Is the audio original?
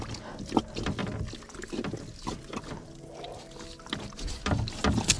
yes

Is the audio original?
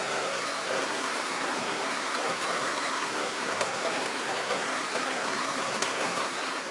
no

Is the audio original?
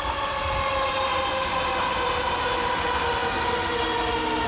yes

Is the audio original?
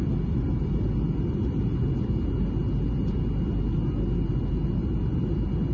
yes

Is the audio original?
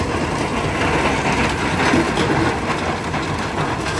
yes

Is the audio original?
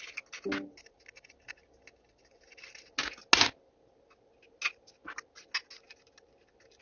yes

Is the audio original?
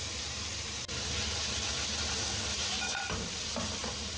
yes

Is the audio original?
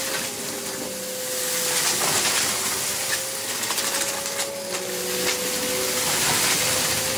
yes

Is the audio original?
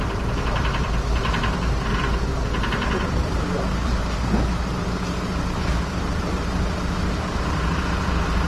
no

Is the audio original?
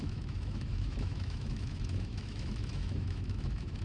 no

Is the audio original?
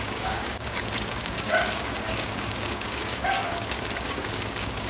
no